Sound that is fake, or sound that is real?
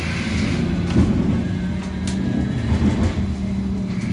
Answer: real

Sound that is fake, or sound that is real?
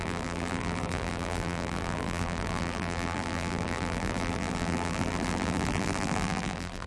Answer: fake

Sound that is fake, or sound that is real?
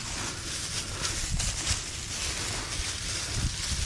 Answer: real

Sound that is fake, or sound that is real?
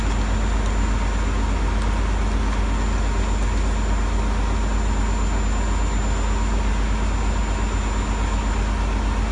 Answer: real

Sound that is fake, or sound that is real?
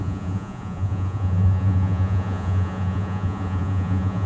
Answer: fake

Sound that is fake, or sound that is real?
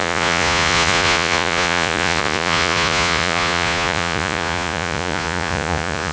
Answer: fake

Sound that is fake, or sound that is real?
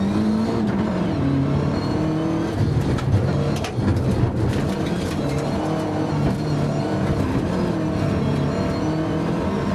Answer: real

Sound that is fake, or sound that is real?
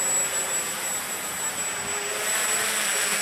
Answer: real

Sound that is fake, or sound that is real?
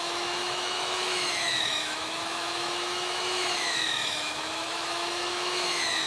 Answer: fake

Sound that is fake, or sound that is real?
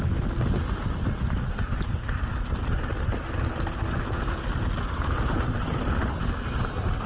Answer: real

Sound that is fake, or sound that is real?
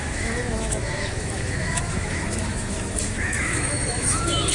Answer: fake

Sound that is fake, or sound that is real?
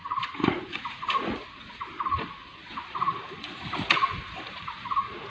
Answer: fake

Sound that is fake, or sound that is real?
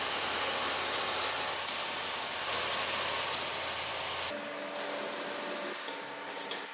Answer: real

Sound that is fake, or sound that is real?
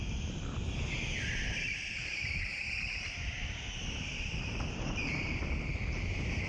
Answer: fake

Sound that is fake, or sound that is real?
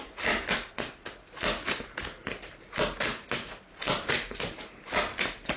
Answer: real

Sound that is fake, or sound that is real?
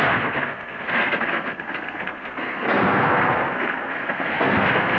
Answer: fake